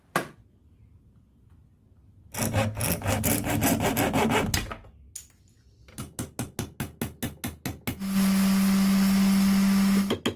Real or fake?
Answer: real